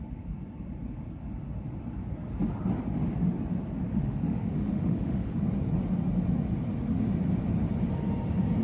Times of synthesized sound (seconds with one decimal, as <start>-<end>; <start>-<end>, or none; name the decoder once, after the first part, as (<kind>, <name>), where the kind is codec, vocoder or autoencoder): 3.9-5.4 (autoencoder, DAC-VAE)